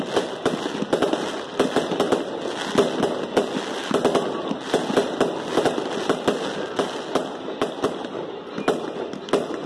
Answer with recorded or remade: recorded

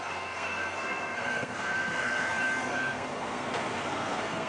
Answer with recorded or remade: remade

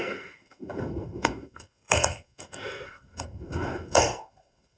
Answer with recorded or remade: remade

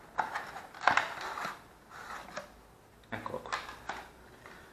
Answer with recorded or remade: recorded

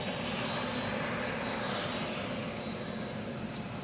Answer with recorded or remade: recorded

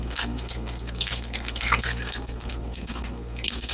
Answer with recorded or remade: remade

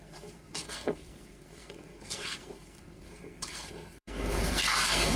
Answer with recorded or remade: remade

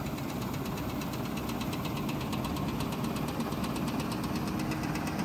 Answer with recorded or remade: recorded